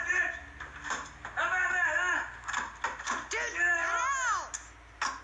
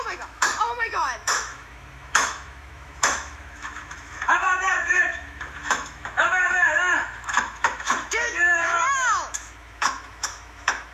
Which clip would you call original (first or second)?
first